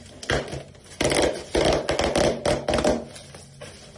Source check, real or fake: real